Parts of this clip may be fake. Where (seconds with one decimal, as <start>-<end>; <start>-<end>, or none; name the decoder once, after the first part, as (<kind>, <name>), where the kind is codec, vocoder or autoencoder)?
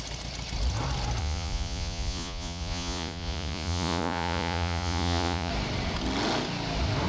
1.2-5.5 (vocoder, Vocos)